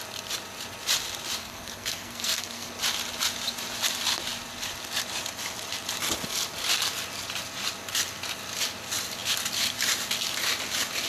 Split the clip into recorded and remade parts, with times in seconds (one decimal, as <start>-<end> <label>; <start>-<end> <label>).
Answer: 0.0-1.4 recorded; 1.4-2.7 remade; 2.7-11.1 recorded